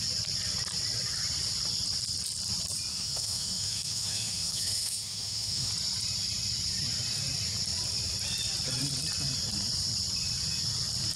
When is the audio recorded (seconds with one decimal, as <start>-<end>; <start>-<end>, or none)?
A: 0.0-2.9; 5.7-11.2